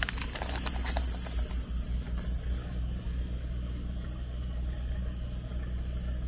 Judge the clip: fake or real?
real